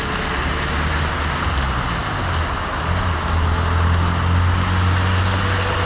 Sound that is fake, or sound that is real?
real